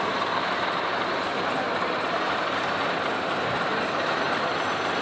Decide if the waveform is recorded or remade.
remade